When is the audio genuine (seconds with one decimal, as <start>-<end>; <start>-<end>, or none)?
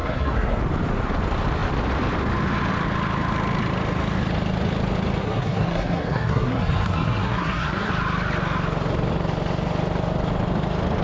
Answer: 0.6-5.2; 7.9-11.0